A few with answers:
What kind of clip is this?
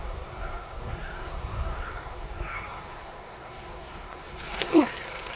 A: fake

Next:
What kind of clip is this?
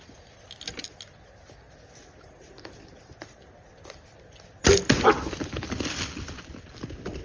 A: real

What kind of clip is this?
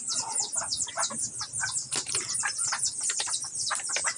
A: real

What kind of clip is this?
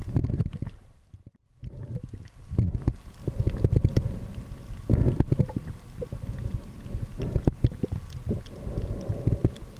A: real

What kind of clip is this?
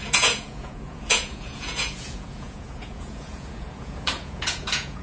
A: fake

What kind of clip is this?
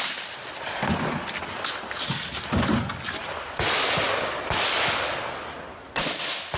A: real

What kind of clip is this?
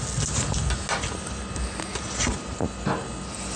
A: real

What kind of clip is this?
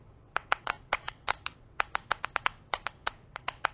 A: fake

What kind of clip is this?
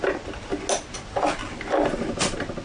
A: real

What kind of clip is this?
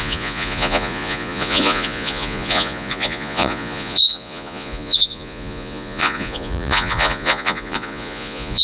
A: fake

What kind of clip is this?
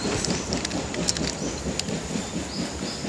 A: real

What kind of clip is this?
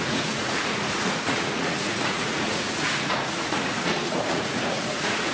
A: fake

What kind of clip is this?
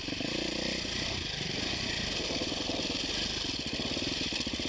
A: real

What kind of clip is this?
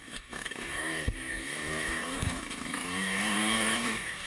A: fake